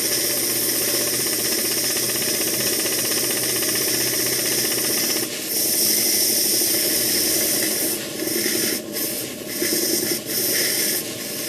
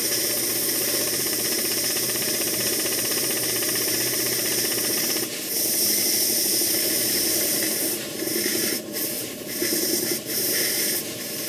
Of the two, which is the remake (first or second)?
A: second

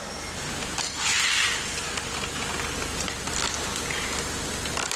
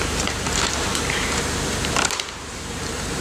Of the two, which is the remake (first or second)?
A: second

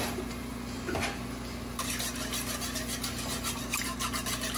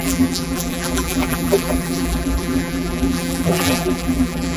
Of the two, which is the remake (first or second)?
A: second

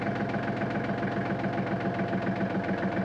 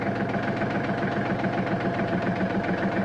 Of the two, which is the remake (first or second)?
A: second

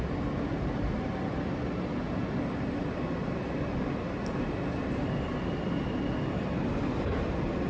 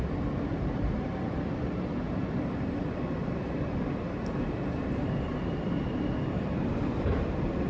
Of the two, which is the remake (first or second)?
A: second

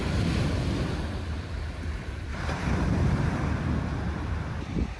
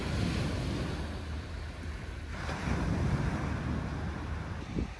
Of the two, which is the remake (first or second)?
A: first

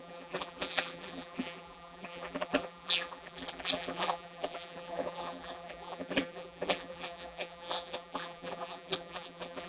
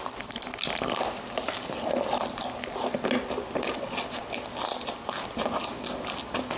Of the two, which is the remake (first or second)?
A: first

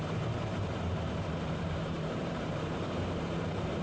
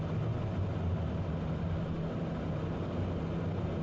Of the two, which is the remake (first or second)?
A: first